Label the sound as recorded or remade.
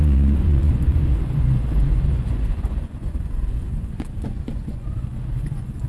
remade